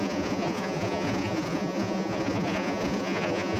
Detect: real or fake fake